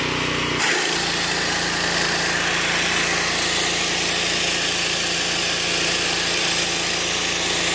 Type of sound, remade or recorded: recorded